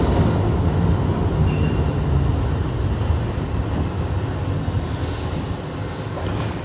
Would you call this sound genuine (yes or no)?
yes